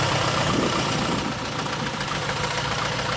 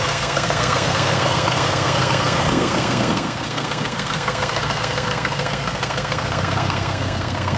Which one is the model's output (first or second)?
second